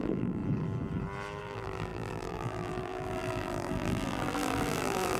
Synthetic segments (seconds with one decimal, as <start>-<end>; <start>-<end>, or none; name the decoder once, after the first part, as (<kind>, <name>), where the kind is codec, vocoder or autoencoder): 0.0-0.4 (vocoder, BigVGAN v2); 1.4-5.2